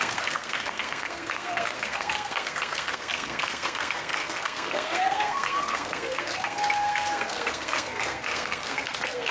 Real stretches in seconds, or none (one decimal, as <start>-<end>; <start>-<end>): none